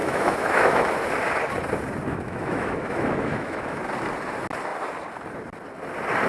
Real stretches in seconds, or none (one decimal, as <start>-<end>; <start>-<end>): 0.9-2.1; 3.8-6.3